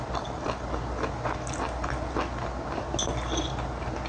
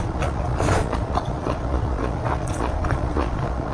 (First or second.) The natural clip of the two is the first